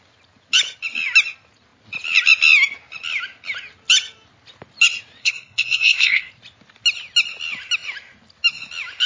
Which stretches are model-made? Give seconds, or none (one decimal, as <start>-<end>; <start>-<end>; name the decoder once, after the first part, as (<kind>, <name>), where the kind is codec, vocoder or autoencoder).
5.2-6.3 (codec, SNAC)